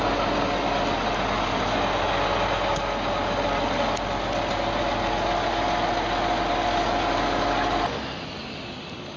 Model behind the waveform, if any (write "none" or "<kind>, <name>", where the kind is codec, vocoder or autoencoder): none